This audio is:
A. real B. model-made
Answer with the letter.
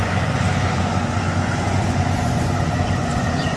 B